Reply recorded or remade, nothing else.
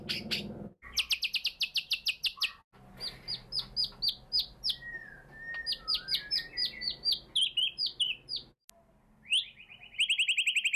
recorded